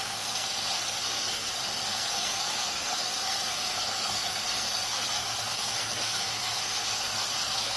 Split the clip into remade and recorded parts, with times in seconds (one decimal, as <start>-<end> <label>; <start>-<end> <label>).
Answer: 0.0-7.8 remade